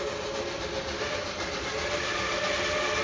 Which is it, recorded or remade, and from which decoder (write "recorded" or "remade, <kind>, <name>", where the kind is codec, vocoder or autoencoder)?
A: recorded